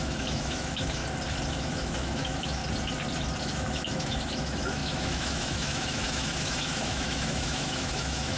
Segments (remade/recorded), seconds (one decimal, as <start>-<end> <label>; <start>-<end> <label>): 0.0-1.0 remade; 1.0-1.5 recorded; 1.5-2.6 remade; 2.6-3.4 recorded; 3.4-8.4 remade